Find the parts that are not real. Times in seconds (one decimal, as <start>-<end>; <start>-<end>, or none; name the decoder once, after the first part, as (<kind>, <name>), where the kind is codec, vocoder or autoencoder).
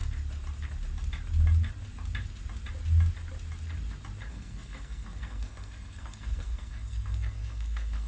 4.3-8.1 (codec, SNAC)